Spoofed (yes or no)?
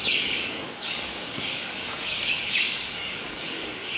yes